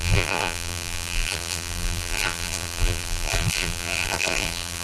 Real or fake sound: fake